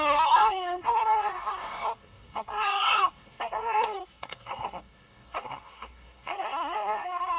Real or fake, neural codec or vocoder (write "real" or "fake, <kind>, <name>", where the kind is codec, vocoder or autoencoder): fake, codec, SNAC